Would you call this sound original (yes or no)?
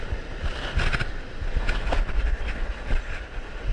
yes